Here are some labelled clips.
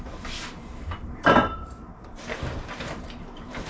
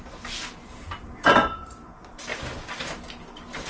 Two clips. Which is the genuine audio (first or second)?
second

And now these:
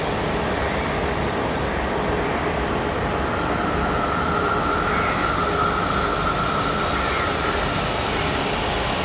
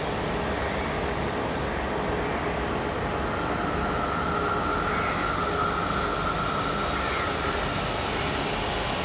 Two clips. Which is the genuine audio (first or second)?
second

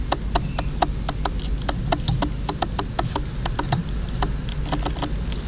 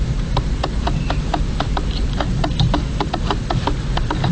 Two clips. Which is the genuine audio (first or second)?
first